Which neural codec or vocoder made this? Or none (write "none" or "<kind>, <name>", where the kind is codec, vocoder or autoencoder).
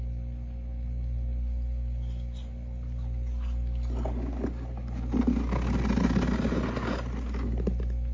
none